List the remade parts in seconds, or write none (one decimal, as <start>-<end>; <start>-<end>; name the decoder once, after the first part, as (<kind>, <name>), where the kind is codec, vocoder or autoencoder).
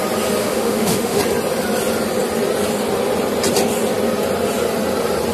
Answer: 0.4-1.2 (autoencoder, DAC-VAE)